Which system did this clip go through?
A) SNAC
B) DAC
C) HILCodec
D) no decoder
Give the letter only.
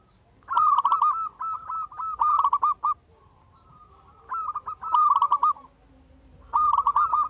D